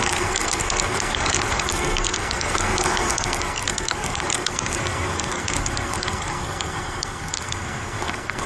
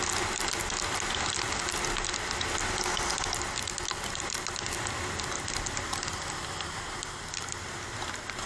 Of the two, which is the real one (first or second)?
second